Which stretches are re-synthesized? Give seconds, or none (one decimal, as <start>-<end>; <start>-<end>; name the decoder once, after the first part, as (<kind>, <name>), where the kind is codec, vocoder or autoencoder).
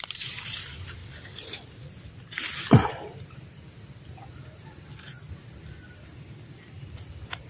0.0-1.0 (vocoder, BigVGAN v2); 5.3-6.1; 7.1-7.5